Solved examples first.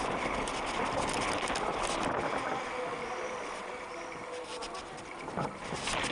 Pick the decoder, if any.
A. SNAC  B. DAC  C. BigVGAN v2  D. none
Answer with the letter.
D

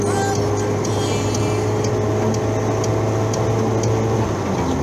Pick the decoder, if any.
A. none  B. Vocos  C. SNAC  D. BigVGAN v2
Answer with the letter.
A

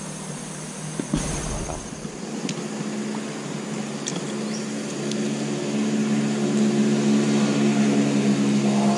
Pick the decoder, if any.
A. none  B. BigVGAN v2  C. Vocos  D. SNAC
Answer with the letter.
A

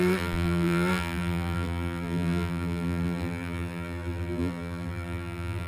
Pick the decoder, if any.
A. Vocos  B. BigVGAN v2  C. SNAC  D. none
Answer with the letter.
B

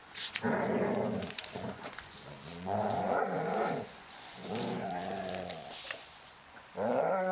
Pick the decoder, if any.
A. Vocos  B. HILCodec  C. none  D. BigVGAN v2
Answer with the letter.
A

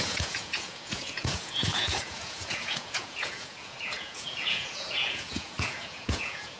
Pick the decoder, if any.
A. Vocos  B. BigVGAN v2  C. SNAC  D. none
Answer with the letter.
A